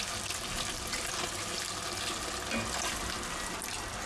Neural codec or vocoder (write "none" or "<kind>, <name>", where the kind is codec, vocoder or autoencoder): none